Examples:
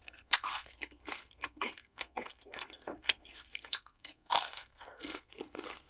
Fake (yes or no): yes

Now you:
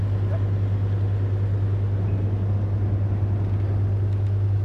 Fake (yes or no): no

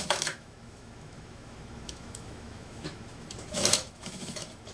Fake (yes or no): yes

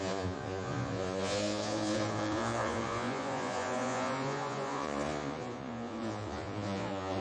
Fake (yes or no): yes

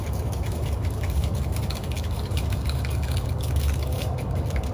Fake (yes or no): yes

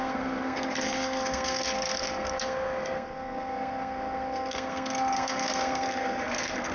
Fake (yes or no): yes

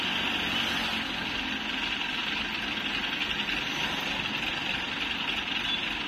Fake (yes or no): no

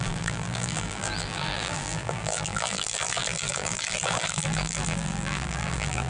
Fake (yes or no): yes